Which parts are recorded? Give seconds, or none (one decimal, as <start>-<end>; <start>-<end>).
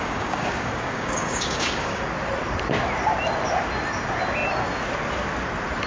2.0-5.9